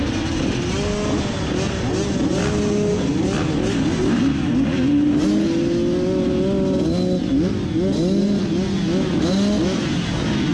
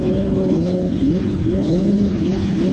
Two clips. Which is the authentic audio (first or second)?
first